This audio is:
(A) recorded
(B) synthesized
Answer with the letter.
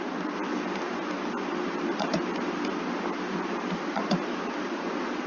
A